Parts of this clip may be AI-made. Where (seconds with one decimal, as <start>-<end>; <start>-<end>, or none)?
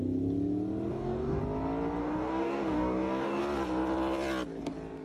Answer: 0.9-1.4; 2.0-3.4